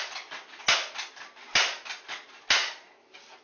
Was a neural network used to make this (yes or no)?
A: no